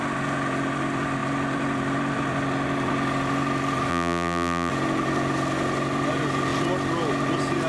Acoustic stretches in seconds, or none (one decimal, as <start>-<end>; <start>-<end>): 0.0-3.9; 4.7-7.7